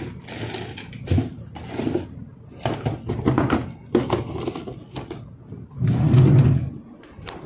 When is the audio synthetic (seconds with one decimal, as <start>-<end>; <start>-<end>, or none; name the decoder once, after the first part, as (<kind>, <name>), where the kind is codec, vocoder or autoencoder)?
none